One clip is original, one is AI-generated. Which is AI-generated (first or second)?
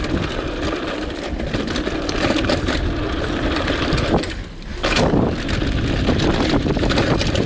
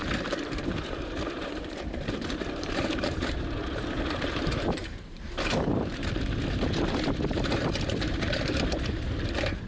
second